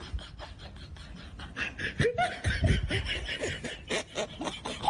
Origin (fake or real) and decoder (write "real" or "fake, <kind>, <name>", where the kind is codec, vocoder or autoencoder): real